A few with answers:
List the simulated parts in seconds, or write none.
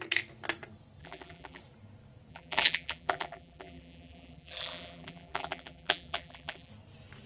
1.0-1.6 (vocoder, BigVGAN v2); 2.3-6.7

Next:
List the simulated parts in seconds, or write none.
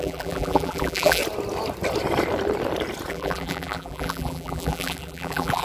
0.0-1.2 (vocoder, BigVGAN v2); 3.1-5.6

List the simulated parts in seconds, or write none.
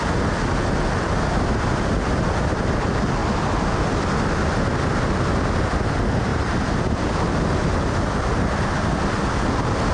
none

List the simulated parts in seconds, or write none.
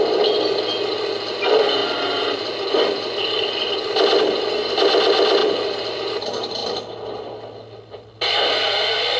1.8-3.7 (vocoder, BigVGAN v2); 5.4-6.1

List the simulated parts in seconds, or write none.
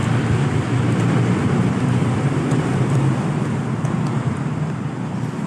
0.0-3.3 (vocoder, BigVGAN v2)